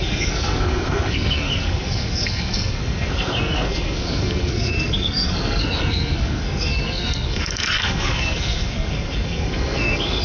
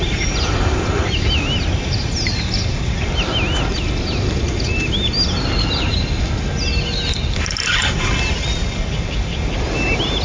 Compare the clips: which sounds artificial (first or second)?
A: first